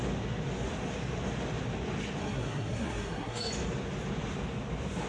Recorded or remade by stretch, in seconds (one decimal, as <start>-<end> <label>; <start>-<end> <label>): 0.0-2.2 recorded; 2.2-3.5 remade; 3.5-5.1 recorded